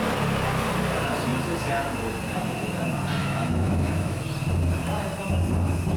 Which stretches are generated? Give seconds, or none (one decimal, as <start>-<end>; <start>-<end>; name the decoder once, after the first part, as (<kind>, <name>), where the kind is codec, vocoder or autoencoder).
3.2-4.2 (autoencoder, DAC-VAE)

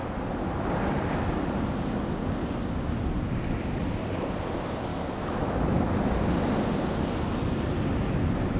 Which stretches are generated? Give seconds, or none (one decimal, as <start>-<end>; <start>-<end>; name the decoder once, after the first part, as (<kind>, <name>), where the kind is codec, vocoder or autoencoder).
4.9-5.7 (autoencoder, DAC-VAE)

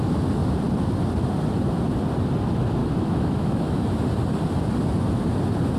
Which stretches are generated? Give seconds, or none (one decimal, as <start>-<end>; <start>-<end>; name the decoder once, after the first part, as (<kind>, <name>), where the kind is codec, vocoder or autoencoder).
2.8-3.8 (autoencoder, DAC-VAE)